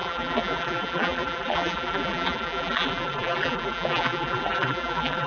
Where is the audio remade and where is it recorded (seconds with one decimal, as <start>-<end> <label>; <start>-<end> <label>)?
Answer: 0.0-5.3 remade